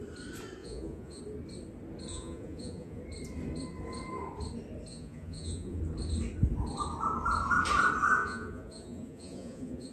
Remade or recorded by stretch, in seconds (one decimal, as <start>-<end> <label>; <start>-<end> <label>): 0.0-0.6 recorded; 0.6-1.2 remade; 1.2-2.1 recorded; 2.1-3.0 remade; 3.0-4.9 recorded; 4.9-5.8 remade; 5.8-8.2 recorded; 8.2-9.9 remade